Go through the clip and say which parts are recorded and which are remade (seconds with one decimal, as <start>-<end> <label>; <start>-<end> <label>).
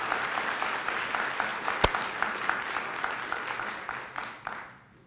0.0-5.1 recorded